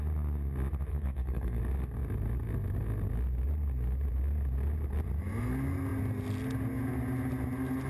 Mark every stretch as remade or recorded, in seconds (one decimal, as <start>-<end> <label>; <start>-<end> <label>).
0.0-0.9 recorded; 0.9-1.6 remade; 1.6-7.9 recorded